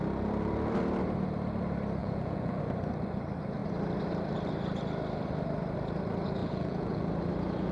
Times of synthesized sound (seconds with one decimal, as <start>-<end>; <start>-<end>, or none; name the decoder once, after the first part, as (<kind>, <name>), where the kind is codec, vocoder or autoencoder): 2.0-2.6 (vocoder, Vocos); 6.4-7.1